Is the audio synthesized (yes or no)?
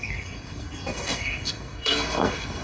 yes